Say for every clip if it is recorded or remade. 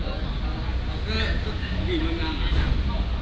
recorded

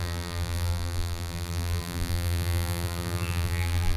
remade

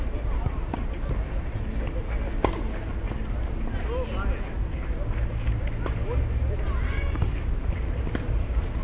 recorded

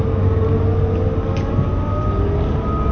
recorded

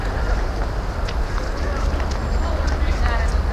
recorded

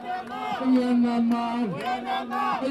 recorded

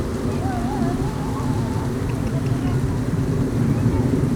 remade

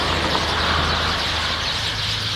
recorded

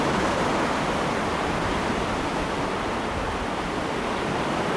recorded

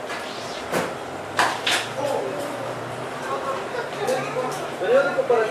remade